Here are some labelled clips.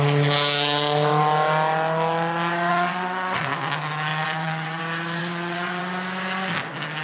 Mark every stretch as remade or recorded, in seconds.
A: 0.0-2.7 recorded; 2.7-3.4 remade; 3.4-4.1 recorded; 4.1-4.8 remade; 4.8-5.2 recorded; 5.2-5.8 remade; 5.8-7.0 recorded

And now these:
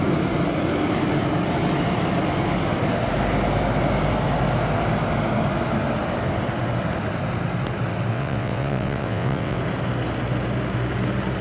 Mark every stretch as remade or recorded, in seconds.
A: 0.0-8.1 recorded; 8.1-9.6 remade; 9.6-11.4 recorded

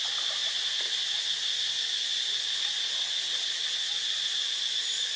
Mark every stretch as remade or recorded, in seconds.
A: 0.0-5.2 recorded